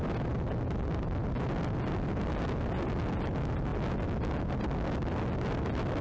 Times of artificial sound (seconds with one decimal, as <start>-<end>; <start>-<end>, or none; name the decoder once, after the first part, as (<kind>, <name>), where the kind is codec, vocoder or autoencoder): none